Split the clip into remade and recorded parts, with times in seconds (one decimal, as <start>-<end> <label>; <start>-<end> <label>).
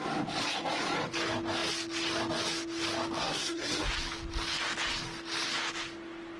0.0-3.2 recorded; 3.2-3.9 remade; 3.9-6.4 recorded